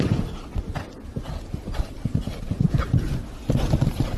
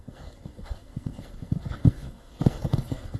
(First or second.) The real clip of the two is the first